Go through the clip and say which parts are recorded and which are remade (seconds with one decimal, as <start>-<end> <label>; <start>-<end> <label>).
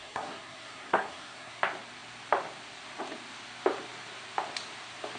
0.0-1.6 remade; 1.6-5.2 recorded